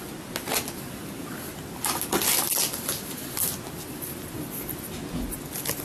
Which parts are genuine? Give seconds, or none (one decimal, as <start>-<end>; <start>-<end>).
0.0-5.8